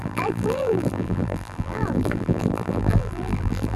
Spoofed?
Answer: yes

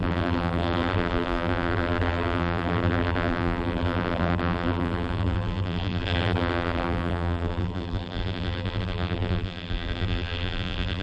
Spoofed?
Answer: yes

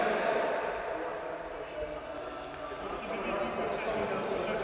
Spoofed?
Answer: no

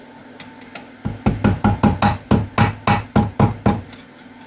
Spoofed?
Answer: no